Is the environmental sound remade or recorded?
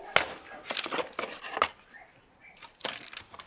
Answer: recorded